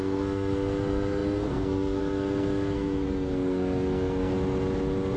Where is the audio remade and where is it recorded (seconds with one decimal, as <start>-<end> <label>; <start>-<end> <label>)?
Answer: 0.0-4.3 remade; 4.3-5.2 recorded